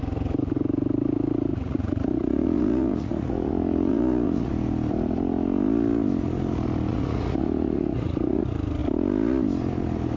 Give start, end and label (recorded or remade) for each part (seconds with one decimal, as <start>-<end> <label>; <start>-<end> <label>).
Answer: 0.0-1.5 recorded; 1.5-4.5 remade; 4.5-6.9 recorded; 6.9-8.4 remade; 8.4-10.2 recorded